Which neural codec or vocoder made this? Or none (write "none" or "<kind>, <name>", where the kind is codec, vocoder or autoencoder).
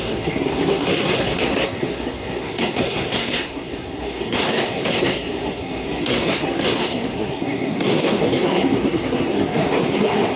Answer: codec, SNAC